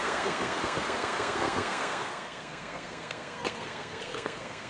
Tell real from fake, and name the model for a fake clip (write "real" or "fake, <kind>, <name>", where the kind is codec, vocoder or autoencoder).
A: fake, codec, SNAC